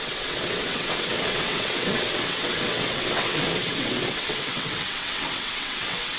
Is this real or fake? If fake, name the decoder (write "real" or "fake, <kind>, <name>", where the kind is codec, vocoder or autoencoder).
fake, vocoder, WaveNeXt